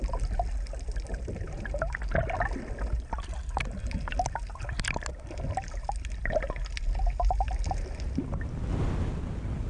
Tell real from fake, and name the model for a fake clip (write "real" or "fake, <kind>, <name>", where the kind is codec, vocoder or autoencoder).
real